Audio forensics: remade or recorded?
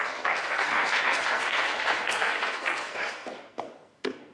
remade